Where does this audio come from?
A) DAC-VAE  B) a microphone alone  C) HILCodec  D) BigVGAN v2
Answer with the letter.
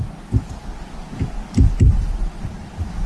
B